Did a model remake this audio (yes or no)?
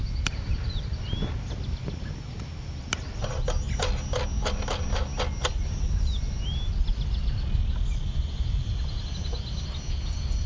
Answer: no